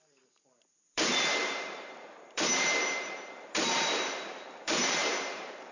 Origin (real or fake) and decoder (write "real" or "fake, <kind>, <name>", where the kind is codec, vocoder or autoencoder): fake, vocoder, BigVGAN v2